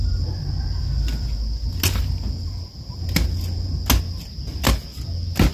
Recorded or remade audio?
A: recorded